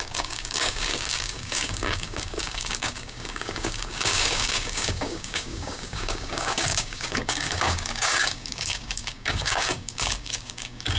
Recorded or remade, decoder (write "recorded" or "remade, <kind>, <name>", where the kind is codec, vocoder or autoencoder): remade, codec, DAC